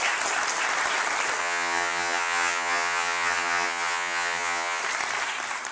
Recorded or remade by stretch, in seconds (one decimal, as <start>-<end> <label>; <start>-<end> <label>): 0.0-1.4 recorded; 1.4-4.8 remade; 4.8-5.7 recorded